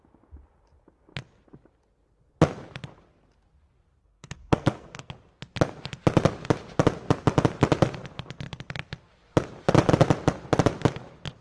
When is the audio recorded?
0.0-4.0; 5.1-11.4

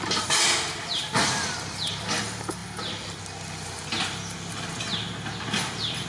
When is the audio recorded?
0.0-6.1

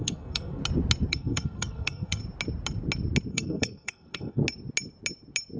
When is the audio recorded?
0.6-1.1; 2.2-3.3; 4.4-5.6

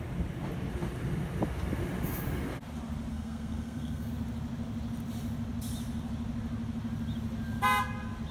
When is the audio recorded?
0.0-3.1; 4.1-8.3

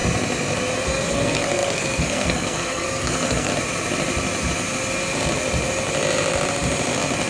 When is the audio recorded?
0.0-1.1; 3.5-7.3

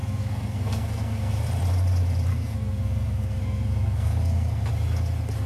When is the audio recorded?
1.4-2.3; 4.7-5.5